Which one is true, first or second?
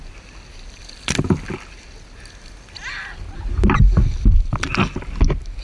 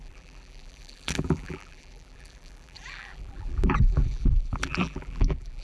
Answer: first